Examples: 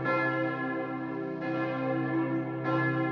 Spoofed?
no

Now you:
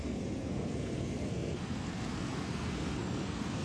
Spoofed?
yes